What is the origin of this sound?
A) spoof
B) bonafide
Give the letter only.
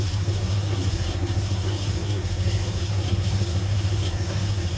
A